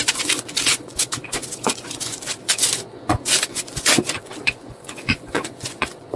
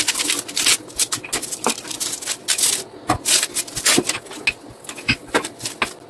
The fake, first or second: first